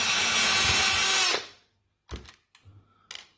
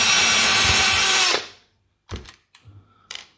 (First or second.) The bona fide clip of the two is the first